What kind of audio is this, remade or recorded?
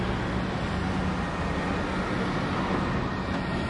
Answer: recorded